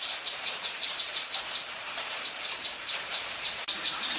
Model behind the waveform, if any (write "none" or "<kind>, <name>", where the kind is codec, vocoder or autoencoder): vocoder, BigVGAN v2